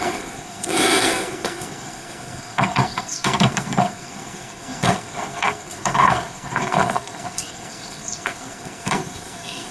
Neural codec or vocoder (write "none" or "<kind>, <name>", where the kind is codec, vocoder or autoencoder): codec, SNAC